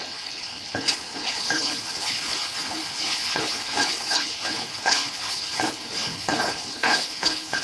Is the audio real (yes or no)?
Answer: no